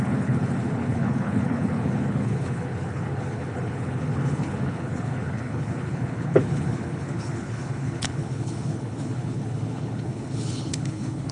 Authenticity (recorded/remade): remade